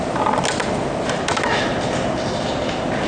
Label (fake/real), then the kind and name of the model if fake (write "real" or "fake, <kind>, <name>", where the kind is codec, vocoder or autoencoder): real